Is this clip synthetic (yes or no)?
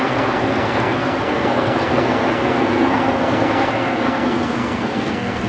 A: yes